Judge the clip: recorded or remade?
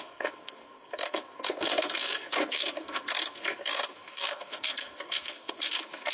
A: remade